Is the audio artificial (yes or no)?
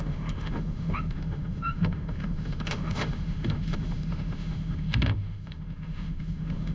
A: yes